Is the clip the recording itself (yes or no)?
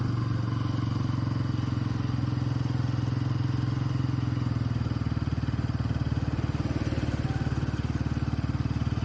yes